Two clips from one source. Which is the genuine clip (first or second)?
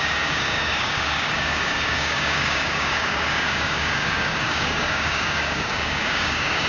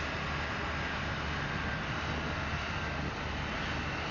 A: second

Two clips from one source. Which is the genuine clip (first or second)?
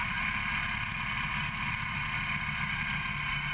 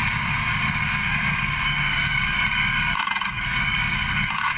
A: first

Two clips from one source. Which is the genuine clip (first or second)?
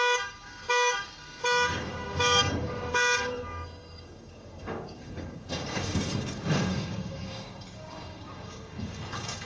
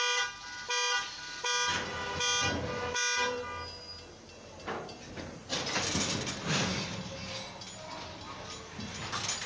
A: second